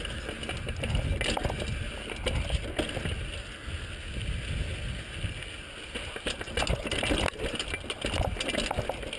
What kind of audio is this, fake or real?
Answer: real